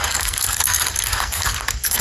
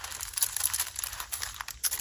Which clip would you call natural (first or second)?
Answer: second